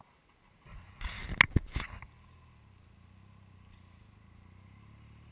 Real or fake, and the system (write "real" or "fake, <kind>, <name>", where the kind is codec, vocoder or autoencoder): real